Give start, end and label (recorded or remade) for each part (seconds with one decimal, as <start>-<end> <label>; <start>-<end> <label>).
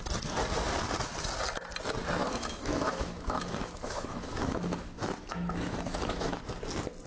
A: 0.0-2.2 recorded; 2.2-6.4 remade; 6.4-7.1 recorded